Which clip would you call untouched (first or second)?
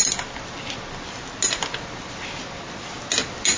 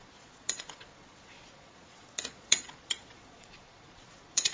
first